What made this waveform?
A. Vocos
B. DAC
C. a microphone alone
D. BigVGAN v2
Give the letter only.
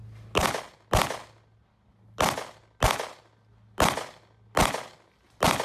C